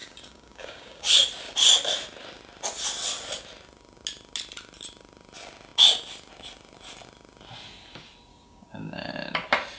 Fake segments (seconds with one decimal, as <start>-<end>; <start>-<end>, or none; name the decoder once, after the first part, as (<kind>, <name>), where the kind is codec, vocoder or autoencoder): 0.0-1.0 (codec, DAC); 8.3-9.1